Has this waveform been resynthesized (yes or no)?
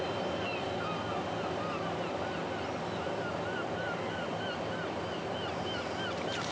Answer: no